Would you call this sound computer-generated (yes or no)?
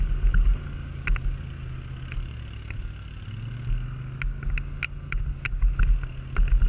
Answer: no